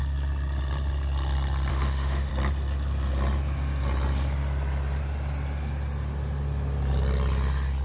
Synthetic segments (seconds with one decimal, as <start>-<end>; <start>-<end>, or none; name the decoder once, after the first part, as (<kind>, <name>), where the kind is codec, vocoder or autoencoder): 1.7-2.3 (autoencoder, DAC-VAE)